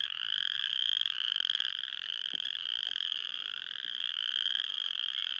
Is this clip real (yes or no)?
no